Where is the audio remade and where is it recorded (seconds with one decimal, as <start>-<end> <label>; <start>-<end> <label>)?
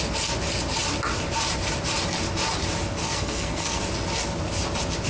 0.0-3.0 recorded; 3.0-3.8 remade; 3.8-5.1 recorded